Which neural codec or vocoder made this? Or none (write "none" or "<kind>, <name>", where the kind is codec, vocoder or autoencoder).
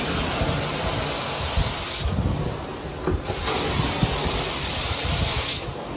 none